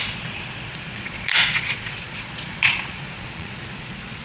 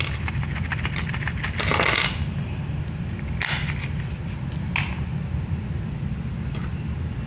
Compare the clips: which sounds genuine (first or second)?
second